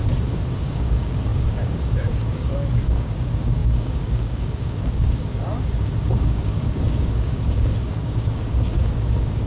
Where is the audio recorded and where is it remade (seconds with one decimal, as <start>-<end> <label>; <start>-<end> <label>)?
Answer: 0.0-0.6 recorded; 0.6-9.5 remade